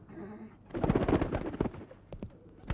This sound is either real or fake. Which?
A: real